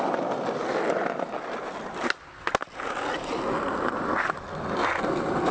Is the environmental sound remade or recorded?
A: recorded